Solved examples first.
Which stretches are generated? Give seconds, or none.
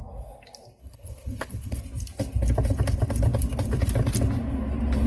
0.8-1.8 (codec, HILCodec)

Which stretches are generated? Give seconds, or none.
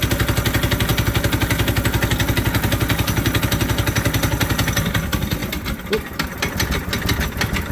none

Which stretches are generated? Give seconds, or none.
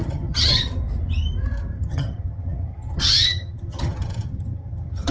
0.0-0.7 (vocoder, HiFi-GAN); 1.7-5.1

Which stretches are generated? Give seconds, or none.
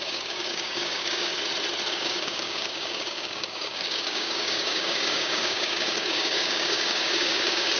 0.0-1.3 (codec, DAC); 1.9-7.8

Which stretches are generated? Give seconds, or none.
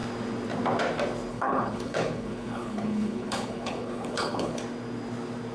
1.3-4.6 (codec, HILCodec)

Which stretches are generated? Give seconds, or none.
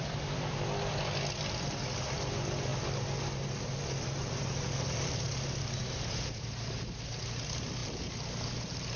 none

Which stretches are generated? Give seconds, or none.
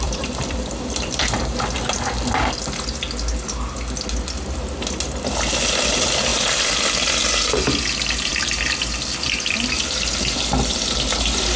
0.0-1.4 (vocoder, BigVGAN v2); 6.3-7.2; 8.3-10.5